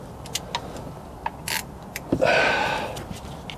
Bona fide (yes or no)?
yes